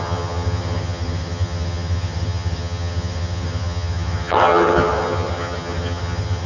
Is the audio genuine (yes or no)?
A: no